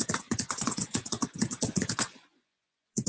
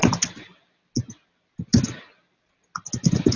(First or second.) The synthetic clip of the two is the first